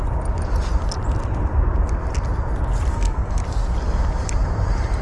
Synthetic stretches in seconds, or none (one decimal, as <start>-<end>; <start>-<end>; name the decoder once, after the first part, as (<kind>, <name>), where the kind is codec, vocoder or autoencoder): 2.9-3.4 (codec, SNAC)